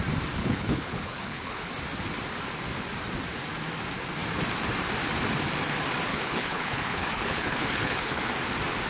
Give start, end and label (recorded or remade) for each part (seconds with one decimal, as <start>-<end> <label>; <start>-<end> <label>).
0.0-0.4 recorded; 0.4-1.7 remade; 1.7-6.1 recorded; 6.1-8.2 remade; 8.2-8.9 recorded